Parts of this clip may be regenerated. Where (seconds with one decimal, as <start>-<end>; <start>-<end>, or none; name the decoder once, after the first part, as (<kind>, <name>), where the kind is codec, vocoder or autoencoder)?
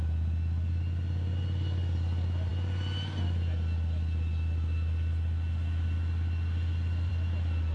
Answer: none